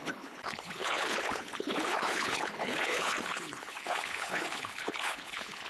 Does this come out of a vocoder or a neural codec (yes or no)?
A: yes